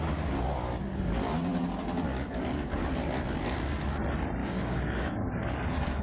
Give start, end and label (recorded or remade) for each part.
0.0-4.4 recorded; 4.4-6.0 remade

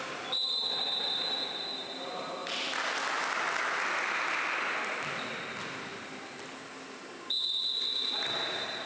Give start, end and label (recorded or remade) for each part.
0.0-8.9 recorded

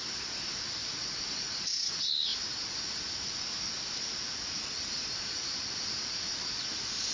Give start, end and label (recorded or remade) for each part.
0.0-7.1 recorded

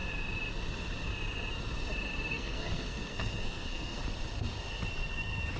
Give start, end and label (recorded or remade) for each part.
0.0-2.3 recorded; 2.3-4.0 remade; 4.0-5.6 recorded

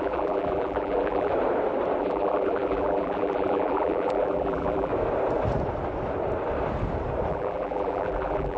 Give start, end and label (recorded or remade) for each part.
0.0-1.3 remade; 1.3-2.0 recorded; 2.0-4.9 remade; 4.9-7.3 recorded; 7.3-8.6 remade

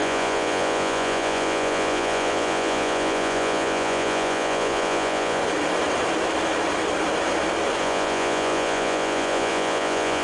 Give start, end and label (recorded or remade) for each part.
0.0-5.4 remade; 5.4-7.8 recorded; 7.8-10.2 remade

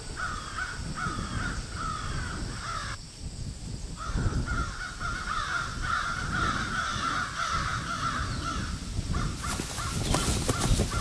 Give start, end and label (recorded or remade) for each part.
0.0-11.0 recorded

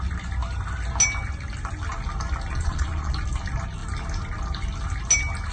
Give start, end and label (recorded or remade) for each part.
0.0-2.5 recorded; 2.5-3.1 remade; 3.1-5.5 recorded